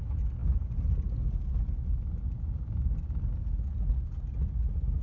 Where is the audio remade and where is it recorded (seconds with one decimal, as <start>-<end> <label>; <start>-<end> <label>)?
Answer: 0.0-5.0 recorded